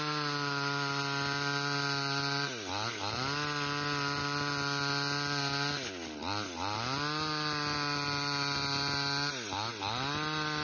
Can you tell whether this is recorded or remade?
recorded